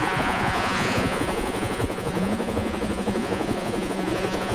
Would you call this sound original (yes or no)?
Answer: no